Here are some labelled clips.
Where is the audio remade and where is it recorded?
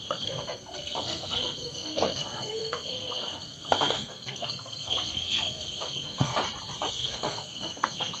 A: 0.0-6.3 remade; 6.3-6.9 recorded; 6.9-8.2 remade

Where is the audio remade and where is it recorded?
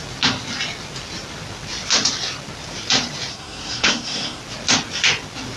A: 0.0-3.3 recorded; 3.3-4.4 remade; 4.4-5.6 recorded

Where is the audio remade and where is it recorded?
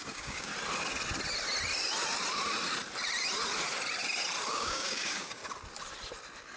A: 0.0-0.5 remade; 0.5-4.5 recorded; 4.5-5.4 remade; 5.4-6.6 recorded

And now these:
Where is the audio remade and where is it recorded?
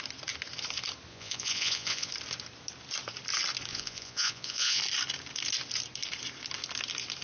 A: 0.0-1.1 recorded; 1.1-2.1 remade; 2.1-3.7 recorded; 3.7-4.8 remade; 4.8-7.2 recorded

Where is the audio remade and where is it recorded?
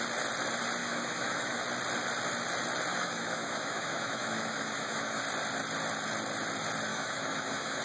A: 0.0-0.8 recorded; 0.8-1.6 remade; 1.6-2.9 recorded; 2.9-5.2 remade; 5.2-6.9 recorded; 6.9-7.8 remade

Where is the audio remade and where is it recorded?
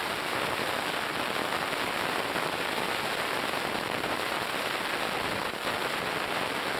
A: 0.0-6.8 recorded